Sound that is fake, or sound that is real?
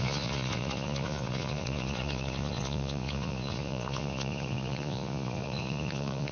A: fake